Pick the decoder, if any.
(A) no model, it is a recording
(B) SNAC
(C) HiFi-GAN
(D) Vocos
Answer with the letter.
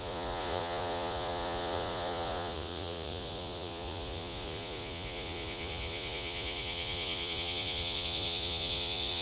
D